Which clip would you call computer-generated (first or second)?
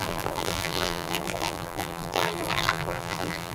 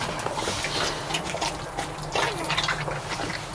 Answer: first